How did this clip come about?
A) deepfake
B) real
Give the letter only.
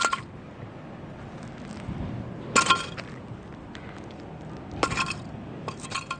B